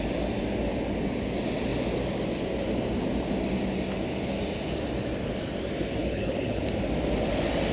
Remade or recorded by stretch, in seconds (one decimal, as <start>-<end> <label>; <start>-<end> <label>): 0.0-6.0 recorded; 6.0-6.6 remade; 6.6-7.7 recorded